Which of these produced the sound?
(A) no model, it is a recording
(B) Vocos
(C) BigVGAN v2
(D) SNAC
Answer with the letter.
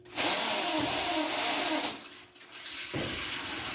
A